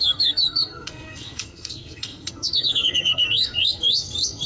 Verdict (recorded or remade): remade